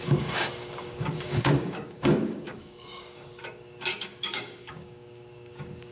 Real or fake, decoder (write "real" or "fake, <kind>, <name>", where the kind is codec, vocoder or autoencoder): fake, codec, DAC